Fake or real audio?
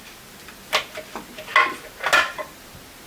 real